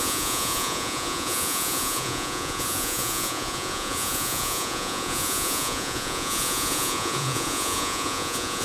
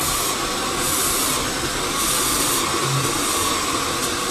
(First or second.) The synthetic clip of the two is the first